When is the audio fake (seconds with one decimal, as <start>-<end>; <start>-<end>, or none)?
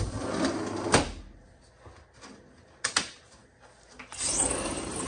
none